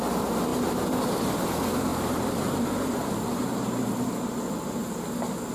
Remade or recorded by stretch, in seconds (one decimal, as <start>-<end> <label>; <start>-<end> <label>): 0.0-1.9 recorded; 1.9-4.4 remade; 4.4-5.5 recorded